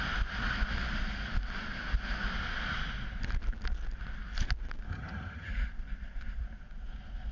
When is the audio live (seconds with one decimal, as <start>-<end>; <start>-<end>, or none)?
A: 0.0-4.9; 5.5-7.3